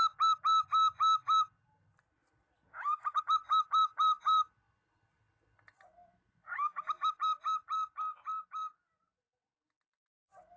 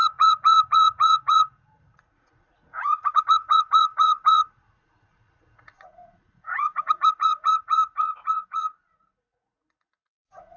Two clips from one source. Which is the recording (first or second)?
first